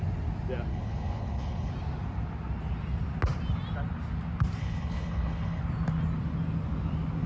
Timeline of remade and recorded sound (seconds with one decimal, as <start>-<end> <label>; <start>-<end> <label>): 0.0-0.7 recorded; 0.7-1.7 remade; 1.7-4.6 recorded; 4.6-5.6 remade; 5.6-7.3 recorded

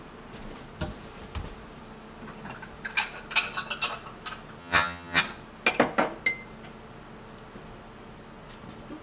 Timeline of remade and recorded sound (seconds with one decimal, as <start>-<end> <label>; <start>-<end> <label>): 0.0-4.6 recorded; 4.6-5.2 remade; 5.2-9.0 recorded

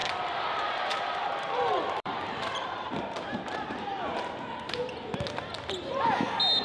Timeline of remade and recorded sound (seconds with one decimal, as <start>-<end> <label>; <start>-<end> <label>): 0.0-3.8 remade; 3.8-6.6 recorded

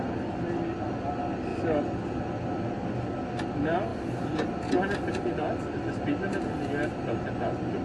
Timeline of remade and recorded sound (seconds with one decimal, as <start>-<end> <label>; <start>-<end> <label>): 0.0-7.8 recorded

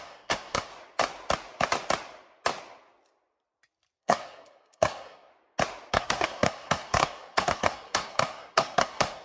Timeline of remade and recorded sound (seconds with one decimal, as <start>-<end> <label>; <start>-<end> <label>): 0.0-0.7 remade; 0.7-4.0 recorded; 4.0-5.3 remade; 5.3-5.9 recorded; 5.9-9.2 remade